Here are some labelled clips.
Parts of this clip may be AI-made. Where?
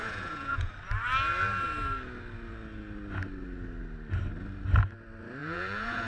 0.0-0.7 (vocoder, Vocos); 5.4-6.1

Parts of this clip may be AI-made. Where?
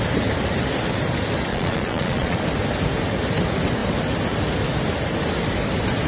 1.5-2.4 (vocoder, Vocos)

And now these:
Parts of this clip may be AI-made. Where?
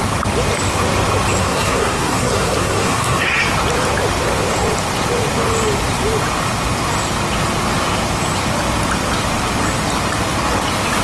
1.4-3.4 (codec, SNAC)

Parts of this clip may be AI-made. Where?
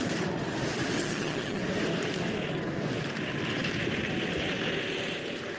1.0-1.6 (vocoder, HiFi-GAN)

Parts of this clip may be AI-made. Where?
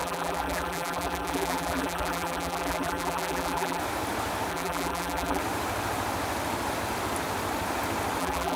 0.0-3.8 (vocoder, BigVGAN v2); 4.5-5.4; 8.2-8.6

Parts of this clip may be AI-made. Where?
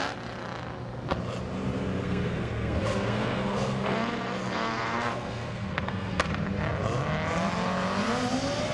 2.0-6.2 (codec, SNAC)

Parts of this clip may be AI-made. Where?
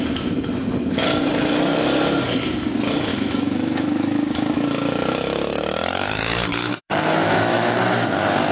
3.1-7.8 (autoencoder, DAC-VAE)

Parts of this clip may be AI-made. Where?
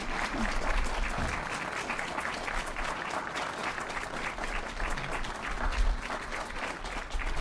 none